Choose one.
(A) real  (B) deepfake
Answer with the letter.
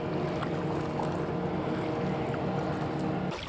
A